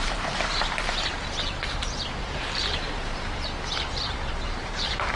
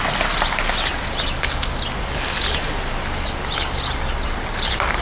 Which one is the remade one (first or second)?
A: first